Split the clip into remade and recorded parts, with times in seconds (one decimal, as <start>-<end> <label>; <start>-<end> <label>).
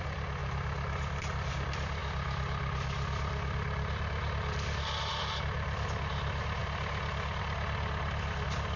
0.0-0.4 recorded; 0.4-1.5 remade; 1.5-8.8 recorded